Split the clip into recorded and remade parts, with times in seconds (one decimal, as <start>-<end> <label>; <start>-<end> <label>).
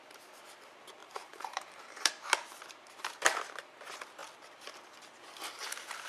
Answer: 0.0-1.0 recorded; 1.0-2.1 remade; 2.1-6.1 recorded